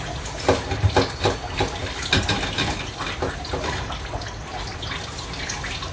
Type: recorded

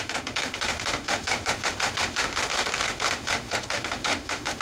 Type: remade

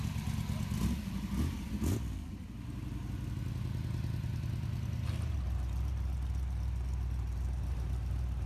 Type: recorded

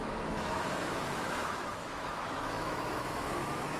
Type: remade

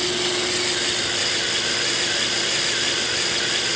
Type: recorded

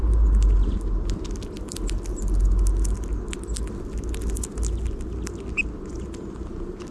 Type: recorded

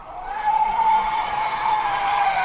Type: recorded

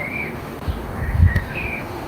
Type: remade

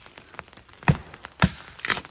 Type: recorded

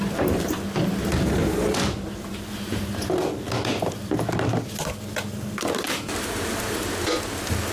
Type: recorded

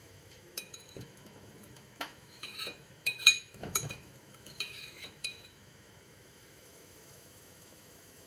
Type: remade